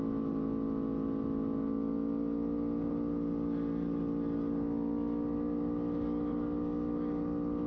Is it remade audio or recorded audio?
recorded